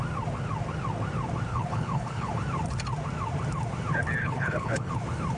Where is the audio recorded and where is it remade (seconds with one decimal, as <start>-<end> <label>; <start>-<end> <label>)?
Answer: 0.0-1.5 recorded; 1.5-2.3 remade; 2.3-4.2 recorded; 4.2-4.9 remade; 4.9-5.4 recorded

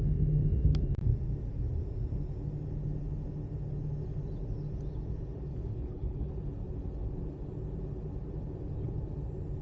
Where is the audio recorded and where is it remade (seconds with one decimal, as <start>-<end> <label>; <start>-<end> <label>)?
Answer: 0.0-5.5 recorded; 5.5-6.3 remade; 6.3-9.6 recorded

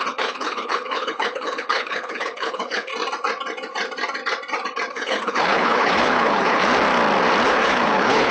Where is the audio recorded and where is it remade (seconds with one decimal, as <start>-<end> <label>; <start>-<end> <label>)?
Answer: 0.0-2.9 remade; 2.9-4.9 recorded; 4.9-6.6 remade; 6.6-7.5 recorded; 7.5-8.3 remade

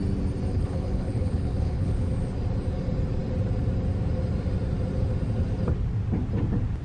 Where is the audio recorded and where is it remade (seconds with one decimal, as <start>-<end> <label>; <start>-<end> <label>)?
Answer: 0.0-0.5 recorded; 0.5-2.1 remade; 2.1-6.8 recorded